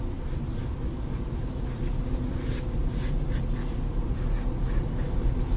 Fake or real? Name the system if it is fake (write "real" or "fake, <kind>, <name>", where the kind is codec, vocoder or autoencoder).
real